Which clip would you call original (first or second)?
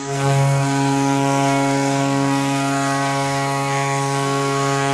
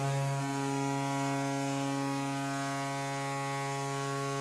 second